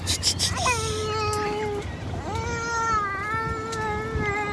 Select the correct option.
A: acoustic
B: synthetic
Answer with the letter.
A